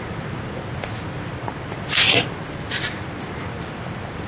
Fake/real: real